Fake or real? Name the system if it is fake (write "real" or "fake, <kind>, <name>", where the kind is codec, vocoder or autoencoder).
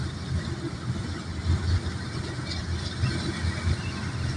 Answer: real